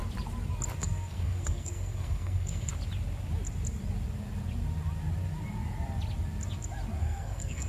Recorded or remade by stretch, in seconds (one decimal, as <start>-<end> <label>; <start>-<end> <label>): 0.0-0.8 recorded; 0.8-2.7 remade; 2.7-7.0 recorded; 7.0-7.7 remade